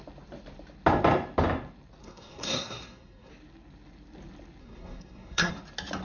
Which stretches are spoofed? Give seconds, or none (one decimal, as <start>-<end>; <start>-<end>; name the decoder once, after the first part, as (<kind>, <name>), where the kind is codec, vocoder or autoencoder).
2.0-3.3 (codec, SNAC); 4.6-5.5

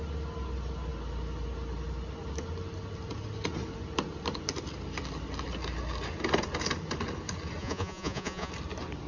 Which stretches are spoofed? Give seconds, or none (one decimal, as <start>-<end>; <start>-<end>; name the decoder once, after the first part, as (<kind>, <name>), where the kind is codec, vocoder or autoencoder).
7.6-8.5 (vocoder, Vocos)

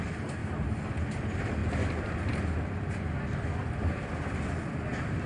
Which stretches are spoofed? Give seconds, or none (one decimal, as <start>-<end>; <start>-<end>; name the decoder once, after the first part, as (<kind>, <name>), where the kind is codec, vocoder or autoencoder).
none

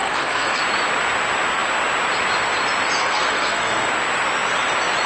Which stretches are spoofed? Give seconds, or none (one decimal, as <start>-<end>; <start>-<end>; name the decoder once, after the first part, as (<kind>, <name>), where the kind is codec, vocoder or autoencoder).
0.0-0.6 (codec, SNAC); 3.0-3.9

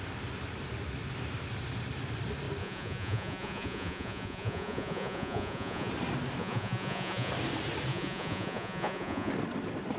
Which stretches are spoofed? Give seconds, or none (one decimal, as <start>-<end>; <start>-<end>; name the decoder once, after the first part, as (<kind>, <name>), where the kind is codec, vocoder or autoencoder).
2.6-5.9 (vocoder, Vocos); 6.4-7.3; 7.9-9.3